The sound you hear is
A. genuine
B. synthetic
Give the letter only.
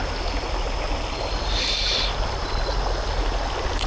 A